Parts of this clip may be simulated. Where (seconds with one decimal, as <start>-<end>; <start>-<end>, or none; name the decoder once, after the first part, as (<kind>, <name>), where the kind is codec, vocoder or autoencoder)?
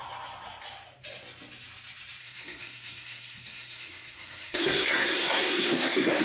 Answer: 2.2-6.2 (codec, SNAC)